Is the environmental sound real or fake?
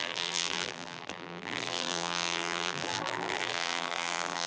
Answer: fake